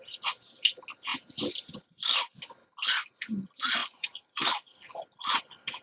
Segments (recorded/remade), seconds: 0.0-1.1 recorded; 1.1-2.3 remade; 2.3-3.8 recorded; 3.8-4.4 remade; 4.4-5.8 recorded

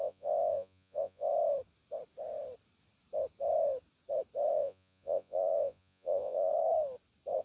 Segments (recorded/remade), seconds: 0.0-1.3 remade; 1.3-4.5 recorded; 4.5-6.5 remade; 6.5-7.4 recorded

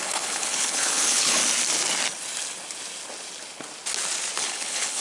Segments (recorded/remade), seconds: 0.0-1.4 remade; 1.4-4.4 recorded; 4.4-5.0 remade

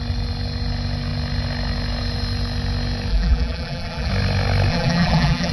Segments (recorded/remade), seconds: 0.0-3.1 recorded; 3.1-4.1 remade; 4.1-4.7 recorded; 4.7-5.5 remade